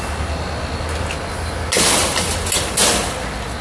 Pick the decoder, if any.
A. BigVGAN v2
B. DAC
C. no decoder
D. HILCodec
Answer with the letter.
C